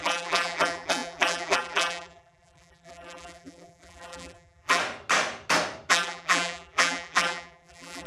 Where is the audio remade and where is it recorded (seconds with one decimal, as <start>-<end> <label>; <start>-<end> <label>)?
0.0-4.8 remade; 4.8-5.9 recorded; 5.9-8.1 remade